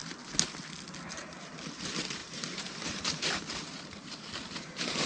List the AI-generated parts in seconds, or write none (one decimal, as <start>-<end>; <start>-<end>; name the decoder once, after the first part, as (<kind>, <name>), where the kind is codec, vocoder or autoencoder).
1.1-5.1 (vocoder, BigVGAN v2)